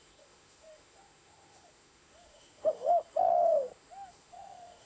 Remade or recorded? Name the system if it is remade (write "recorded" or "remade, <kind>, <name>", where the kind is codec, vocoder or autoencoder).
remade, autoencoder, DAC-VAE